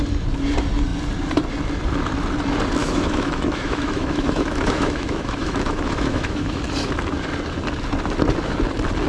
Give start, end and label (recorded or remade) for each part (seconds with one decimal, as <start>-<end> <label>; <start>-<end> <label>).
0.0-2.8 recorded; 2.8-6.6 remade; 6.6-9.1 recorded